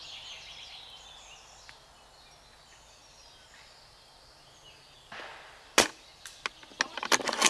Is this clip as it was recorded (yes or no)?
yes